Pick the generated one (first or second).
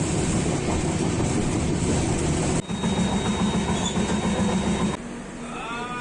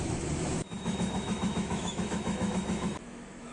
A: second